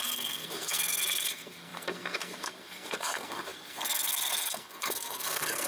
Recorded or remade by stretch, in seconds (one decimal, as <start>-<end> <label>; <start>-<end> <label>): 0.0-5.7 remade